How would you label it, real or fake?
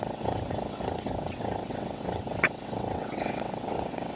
fake